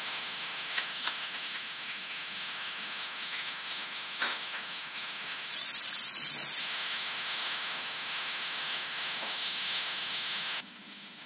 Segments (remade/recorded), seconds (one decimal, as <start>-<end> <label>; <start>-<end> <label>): 0.0-5.5 remade; 5.5-6.6 recorded; 6.6-11.3 remade